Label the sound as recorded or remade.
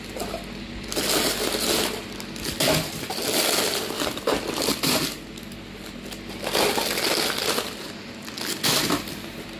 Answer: recorded